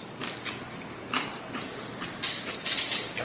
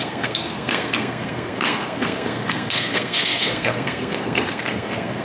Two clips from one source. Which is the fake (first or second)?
second